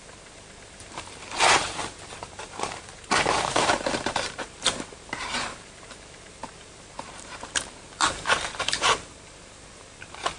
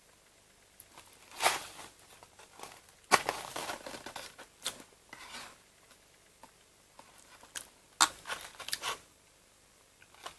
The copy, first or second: first